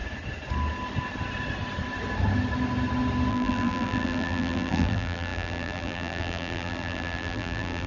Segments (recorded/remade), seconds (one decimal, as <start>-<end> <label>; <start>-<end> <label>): 0.0-3.3 recorded; 3.3-7.9 remade